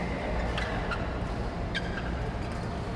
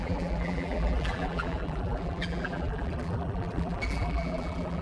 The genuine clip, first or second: first